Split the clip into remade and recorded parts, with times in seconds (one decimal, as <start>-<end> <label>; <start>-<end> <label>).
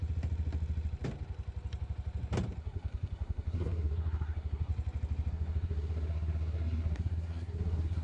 0.0-2.6 recorded; 2.6-4.7 remade; 4.7-5.3 recorded; 5.3-8.0 remade